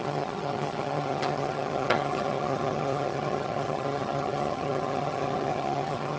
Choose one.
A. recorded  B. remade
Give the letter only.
B